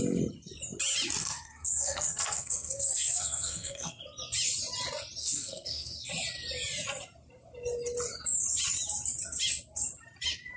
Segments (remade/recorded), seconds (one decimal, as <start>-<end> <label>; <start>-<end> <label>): 0.0-1.2 recorded; 1.2-4.0 remade; 4.0-5.2 recorded; 5.2-6.1 remade; 6.1-10.6 recorded